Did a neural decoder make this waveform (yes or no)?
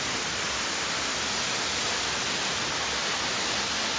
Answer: no